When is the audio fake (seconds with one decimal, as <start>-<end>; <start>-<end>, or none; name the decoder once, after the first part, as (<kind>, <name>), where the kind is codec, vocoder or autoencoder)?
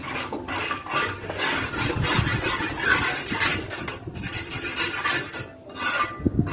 3.5-5.5 (vocoder, BigVGAN v2)